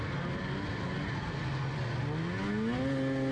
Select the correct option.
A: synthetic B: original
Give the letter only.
B